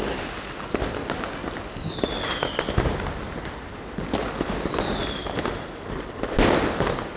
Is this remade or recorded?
recorded